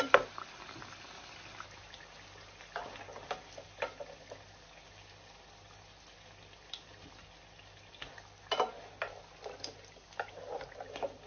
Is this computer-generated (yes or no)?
no